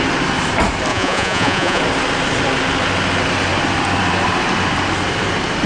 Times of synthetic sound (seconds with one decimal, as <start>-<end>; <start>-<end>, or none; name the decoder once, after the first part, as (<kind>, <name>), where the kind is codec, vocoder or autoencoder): 0.9-1.8 (vocoder, Vocos)